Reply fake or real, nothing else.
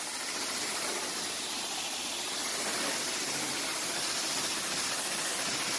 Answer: real